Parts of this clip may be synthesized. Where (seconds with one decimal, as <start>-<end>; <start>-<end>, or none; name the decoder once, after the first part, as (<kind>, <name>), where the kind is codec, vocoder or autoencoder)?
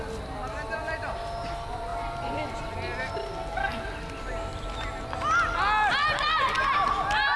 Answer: none